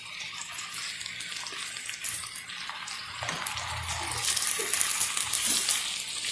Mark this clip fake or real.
real